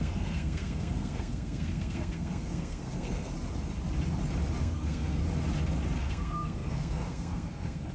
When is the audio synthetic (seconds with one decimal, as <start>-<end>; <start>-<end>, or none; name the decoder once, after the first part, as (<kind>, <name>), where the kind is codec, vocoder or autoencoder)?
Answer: 0.0-3.3 (codec, SNAC); 4.6-5.2; 6.0-7.9